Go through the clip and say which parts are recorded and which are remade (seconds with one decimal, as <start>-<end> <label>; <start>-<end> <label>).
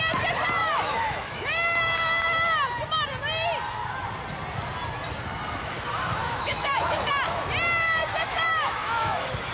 0.0-0.6 recorded; 0.6-1.9 remade; 1.9-6.2 recorded; 6.2-7.1 remade; 7.1-8.0 recorded; 8.0-9.5 remade